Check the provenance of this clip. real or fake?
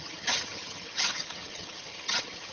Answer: fake